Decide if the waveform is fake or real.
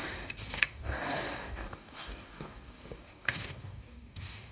fake